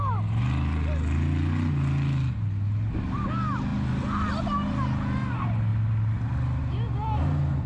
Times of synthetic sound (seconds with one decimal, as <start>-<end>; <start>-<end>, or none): none

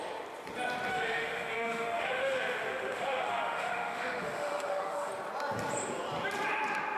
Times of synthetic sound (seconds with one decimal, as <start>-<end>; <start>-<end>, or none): 0.9-5.1

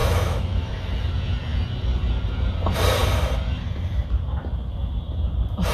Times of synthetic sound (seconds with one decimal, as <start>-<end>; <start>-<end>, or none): 0.0-0.7

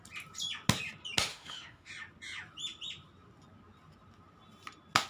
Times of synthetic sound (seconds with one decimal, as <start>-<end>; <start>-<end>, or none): 1.3-1.9

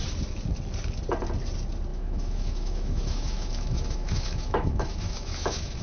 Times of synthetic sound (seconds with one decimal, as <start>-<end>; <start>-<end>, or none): 1.9-5.8

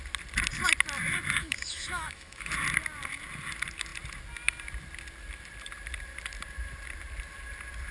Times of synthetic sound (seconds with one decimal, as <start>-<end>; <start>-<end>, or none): 1.4-2.5

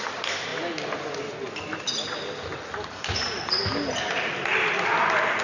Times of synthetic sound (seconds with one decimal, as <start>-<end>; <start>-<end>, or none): none